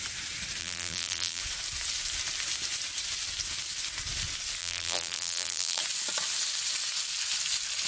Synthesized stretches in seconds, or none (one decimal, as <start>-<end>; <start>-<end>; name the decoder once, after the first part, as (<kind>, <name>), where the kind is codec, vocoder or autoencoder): 0.6-1.4 (vocoder, BigVGAN v2); 4.6-5.8